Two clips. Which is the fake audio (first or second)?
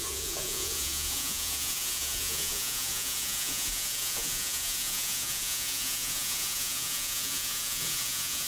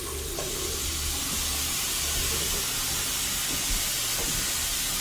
first